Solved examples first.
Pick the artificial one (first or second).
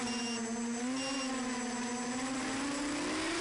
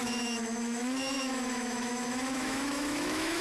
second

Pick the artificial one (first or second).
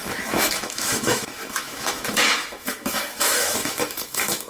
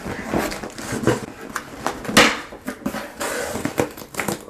first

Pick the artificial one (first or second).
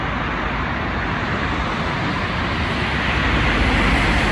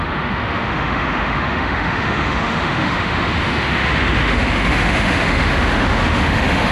second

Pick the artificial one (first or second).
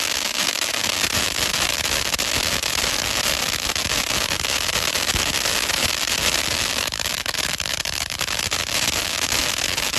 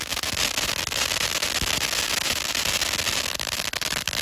first